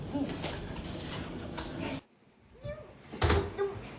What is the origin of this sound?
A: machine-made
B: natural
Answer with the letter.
B